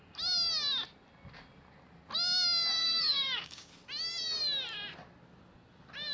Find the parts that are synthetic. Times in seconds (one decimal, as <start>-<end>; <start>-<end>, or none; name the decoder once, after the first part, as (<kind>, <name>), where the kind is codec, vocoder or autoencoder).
2.8-3.7 (codec, DAC)